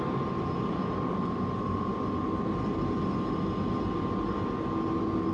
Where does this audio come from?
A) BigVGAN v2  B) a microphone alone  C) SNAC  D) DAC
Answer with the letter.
B